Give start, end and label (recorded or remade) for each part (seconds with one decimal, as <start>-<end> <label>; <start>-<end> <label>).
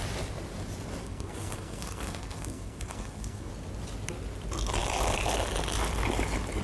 0.0-1.0 recorded; 1.0-3.5 remade; 3.5-6.6 recorded